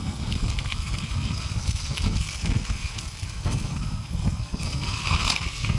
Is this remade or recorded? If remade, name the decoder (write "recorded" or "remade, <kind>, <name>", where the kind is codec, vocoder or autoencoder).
remade, codec, SNAC